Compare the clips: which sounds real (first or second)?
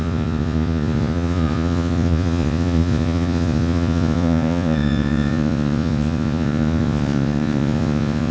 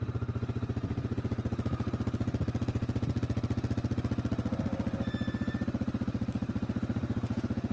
second